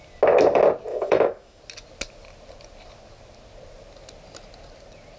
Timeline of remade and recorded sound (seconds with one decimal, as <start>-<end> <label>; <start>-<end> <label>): 0.0-0.9 recorded; 0.9-1.6 remade; 1.6-5.2 recorded